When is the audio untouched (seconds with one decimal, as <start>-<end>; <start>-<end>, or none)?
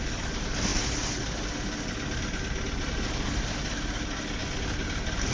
0.0-5.3